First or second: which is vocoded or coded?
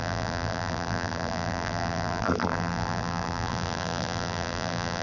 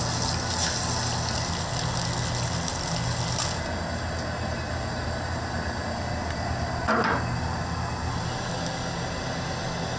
first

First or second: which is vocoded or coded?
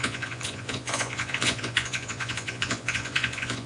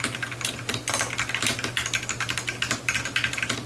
first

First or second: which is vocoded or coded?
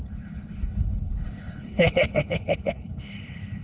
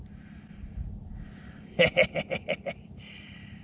first